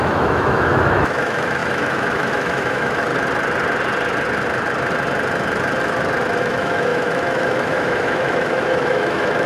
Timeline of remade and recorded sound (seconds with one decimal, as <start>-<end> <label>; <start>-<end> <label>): 0.0-3.1 remade; 3.1-6.4 recorded; 6.4-9.5 remade